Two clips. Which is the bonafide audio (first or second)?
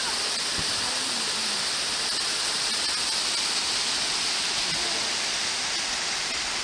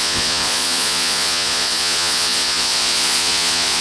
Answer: first